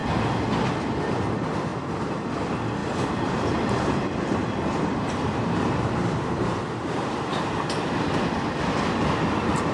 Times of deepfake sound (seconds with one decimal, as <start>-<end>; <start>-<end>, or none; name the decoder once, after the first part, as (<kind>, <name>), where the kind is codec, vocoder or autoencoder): 1.7-2.3 (vocoder, BigVGAN v2); 2.8-7.7